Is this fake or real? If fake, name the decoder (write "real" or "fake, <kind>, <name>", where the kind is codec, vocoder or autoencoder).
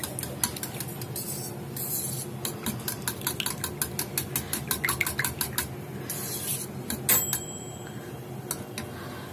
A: real